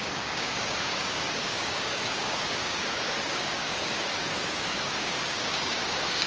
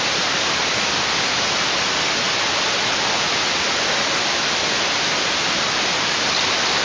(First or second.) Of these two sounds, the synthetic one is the first